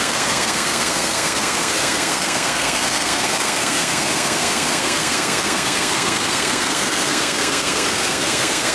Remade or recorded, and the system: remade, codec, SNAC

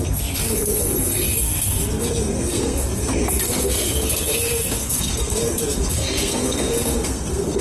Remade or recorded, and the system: remade, codec, SNAC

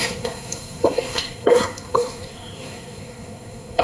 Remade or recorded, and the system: remade, codec, SNAC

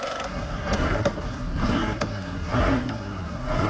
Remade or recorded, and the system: remade, codec, SNAC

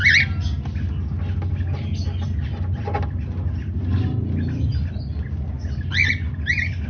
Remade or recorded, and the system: recorded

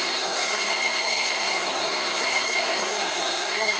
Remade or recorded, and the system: remade, codec, SNAC